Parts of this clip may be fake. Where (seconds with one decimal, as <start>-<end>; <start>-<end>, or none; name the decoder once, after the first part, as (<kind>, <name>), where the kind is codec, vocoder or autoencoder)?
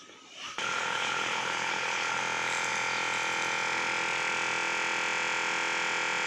0.6-2.2 (codec, HILCodec)